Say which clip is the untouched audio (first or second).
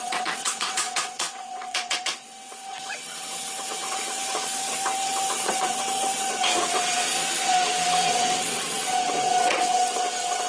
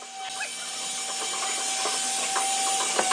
second